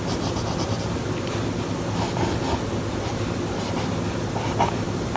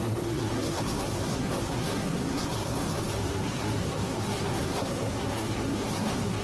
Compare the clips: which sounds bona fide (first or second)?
first